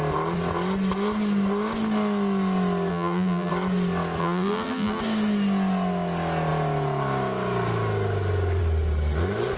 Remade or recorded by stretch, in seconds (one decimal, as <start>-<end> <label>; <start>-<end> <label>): 0.0-2.9 recorded; 2.9-3.5 remade; 3.5-4.2 recorded; 4.2-5.0 remade; 5.0-9.6 recorded